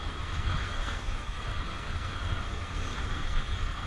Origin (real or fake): fake